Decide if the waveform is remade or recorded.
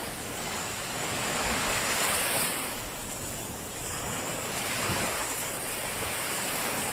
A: remade